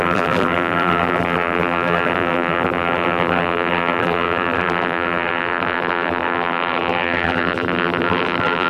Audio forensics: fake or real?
fake